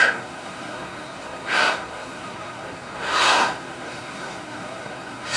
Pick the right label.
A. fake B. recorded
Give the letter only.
A